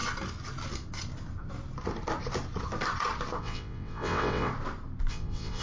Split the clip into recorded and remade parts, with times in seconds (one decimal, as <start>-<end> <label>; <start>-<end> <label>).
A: 0.0-3.4 recorded; 3.4-4.5 remade; 4.5-5.1 recorded; 5.1-5.6 remade